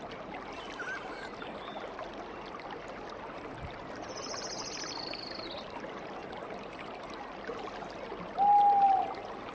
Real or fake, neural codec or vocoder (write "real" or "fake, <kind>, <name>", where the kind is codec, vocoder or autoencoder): real